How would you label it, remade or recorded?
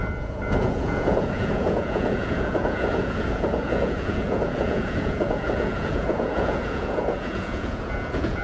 remade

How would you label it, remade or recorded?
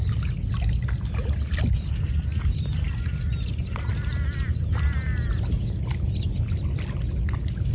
recorded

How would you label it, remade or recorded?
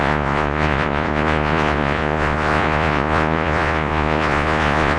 remade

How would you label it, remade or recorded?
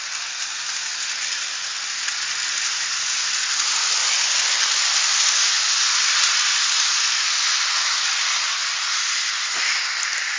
recorded